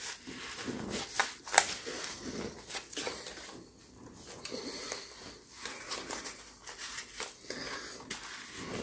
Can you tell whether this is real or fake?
real